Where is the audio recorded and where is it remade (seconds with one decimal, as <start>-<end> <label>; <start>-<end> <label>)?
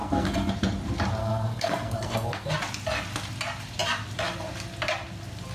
0.0-0.5 remade; 0.5-1.2 recorded; 1.2-2.5 remade; 2.5-5.5 recorded